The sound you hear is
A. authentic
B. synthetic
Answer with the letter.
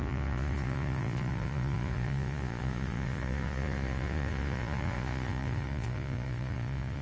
B